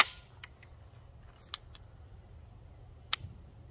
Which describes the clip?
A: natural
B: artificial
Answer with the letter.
A